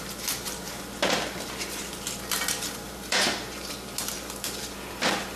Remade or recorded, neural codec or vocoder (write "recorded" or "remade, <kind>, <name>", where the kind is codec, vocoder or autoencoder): recorded